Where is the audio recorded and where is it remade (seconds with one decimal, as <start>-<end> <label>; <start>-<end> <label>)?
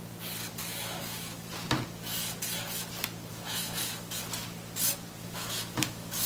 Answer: 0.0-0.6 recorded; 0.6-1.5 remade; 1.5-3.3 recorded; 3.3-4.2 remade; 4.2-5.2 recorded; 5.2-6.3 remade